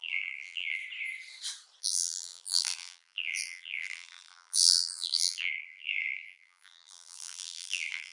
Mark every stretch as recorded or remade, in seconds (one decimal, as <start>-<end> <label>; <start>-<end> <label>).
0.0-0.8 remade; 0.8-1.8 recorded; 1.8-8.1 remade